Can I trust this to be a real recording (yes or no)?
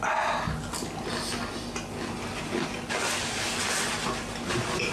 yes